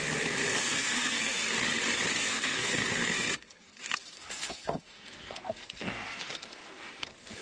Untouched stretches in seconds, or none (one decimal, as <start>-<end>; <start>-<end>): 0.0-0.6; 1.4-2.1